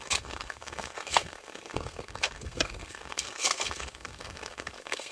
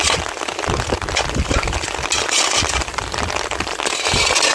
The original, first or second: second